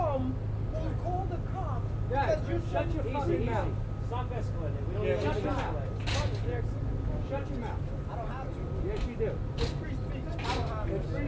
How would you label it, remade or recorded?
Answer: recorded